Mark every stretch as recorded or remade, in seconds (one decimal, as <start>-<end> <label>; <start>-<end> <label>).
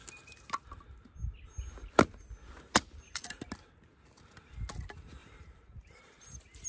0.0-5.2 recorded; 5.2-6.2 remade; 6.2-6.7 recorded